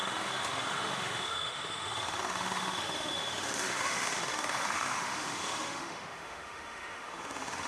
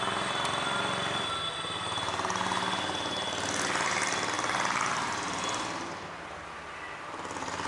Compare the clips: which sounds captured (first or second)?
second